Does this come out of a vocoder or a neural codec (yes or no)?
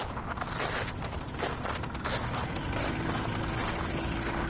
no